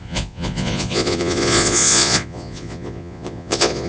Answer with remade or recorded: remade